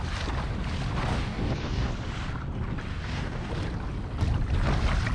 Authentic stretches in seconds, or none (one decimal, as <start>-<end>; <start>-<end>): 0.0-1.1; 1.9-2.9; 3.5-5.1